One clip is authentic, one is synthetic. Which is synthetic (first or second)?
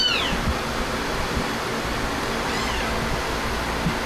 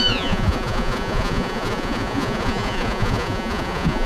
second